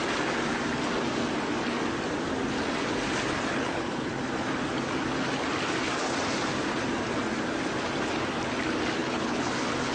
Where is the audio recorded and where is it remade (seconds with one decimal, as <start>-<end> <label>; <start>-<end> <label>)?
0.0-3.5 recorded; 3.5-4.1 remade; 4.1-9.0 recorded; 9.0-9.5 remade; 9.5-9.9 recorded